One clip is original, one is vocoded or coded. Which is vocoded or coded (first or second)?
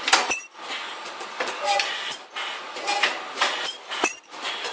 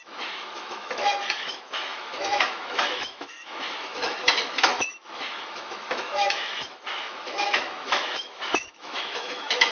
second